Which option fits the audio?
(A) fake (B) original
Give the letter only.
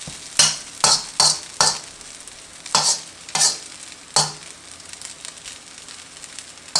B